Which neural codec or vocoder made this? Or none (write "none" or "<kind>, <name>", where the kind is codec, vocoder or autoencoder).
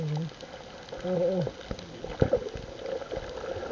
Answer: none